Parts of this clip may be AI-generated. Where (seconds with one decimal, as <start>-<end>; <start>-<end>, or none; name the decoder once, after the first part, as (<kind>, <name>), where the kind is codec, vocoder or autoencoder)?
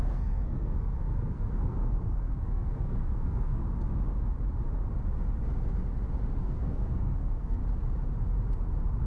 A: 0.0-3.6 (codec, SNAC); 6.4-7.6